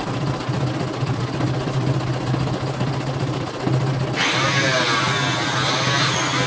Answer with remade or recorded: recorded